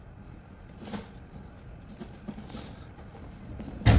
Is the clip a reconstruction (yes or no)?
no